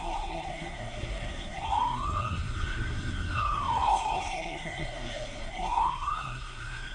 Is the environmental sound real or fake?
fake